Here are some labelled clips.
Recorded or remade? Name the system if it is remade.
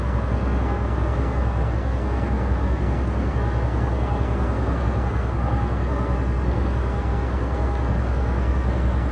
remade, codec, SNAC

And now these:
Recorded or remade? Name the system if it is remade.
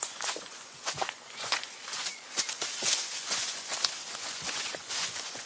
remade, vocoder, Vocos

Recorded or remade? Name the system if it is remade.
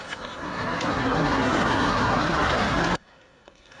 remade, codec, SNAC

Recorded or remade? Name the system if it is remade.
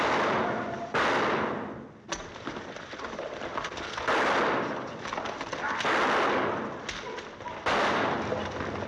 recorded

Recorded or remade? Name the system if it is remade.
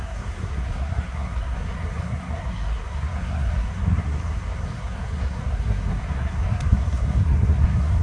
remade, codec, SNAC